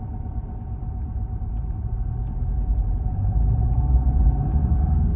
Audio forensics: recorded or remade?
recorded